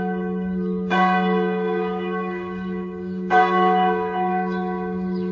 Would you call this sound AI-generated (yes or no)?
yes